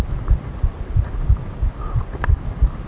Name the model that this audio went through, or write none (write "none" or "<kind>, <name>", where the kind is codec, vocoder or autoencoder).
none